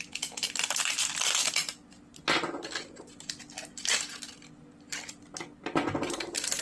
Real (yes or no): yes